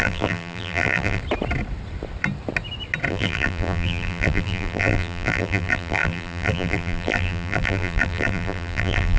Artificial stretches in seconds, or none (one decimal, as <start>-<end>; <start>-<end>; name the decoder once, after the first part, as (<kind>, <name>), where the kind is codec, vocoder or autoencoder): 0.0-1.2 (vocoder, BigVGAN v2); 3.1-9.2